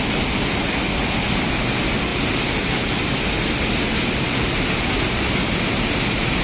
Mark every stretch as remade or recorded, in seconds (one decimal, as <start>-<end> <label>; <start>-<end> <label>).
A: 0.0-6.4 recorded